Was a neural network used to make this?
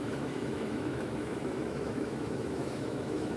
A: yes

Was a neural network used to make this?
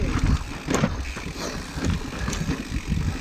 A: no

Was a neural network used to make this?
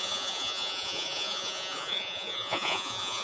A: yes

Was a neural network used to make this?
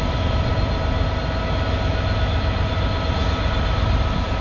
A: no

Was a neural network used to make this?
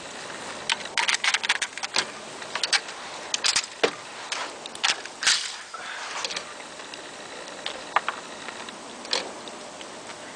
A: no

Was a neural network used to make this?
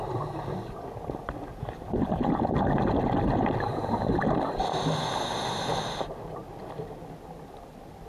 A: no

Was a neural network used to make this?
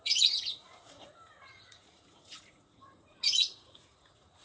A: yes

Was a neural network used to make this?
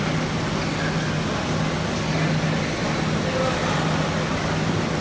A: no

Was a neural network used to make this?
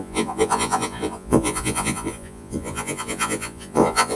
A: yes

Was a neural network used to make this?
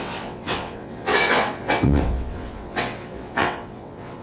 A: yes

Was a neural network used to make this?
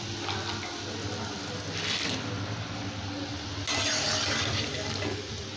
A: no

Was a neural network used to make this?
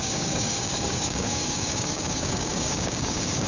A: yes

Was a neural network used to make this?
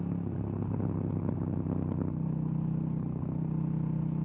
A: no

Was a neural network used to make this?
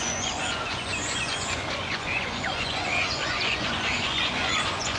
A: yes